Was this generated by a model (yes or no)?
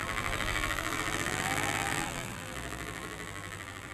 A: yes